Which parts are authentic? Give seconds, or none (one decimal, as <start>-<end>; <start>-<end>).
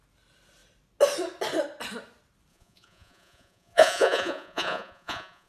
0.0-2.5